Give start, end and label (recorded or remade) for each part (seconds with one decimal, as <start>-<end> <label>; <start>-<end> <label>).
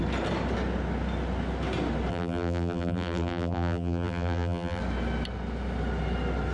0.0-2.1 recorded; 2.1-4.8 remade; 4.8-6.5 recorded